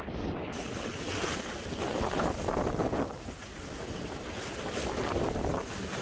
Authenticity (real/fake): real